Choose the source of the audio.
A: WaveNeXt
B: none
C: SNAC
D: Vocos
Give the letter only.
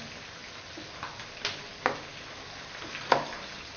B